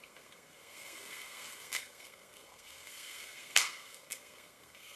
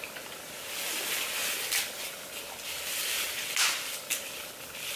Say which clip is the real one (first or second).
second